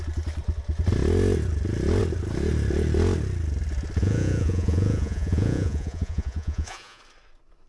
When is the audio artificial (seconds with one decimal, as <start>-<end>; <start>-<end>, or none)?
4.0-7.0